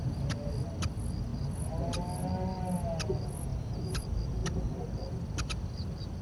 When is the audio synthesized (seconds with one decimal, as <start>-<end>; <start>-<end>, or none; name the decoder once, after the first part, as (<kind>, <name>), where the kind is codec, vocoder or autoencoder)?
3.5-4.0 (vocoder, BigVGAN v2)